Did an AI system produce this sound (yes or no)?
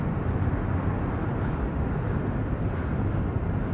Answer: no